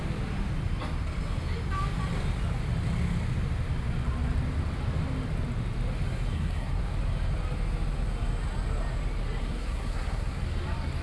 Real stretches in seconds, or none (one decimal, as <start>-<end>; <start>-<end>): 0.0-6.3; 6.8-9.4; 10.4-11.0